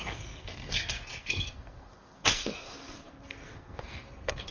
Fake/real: fake